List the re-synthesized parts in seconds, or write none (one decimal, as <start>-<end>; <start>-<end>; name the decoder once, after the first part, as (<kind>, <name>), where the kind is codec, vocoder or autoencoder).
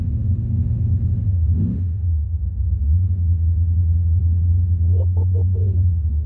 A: 0.0-6.3 (autoencoder, DAC-VAE)